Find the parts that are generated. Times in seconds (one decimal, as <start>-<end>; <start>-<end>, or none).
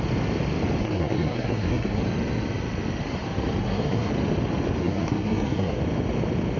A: 0.8-2.0; 3.6-4.1; 4.8-5.8